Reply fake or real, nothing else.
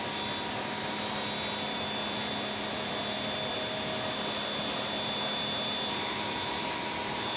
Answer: real